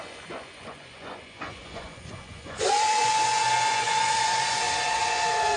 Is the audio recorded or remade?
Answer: remade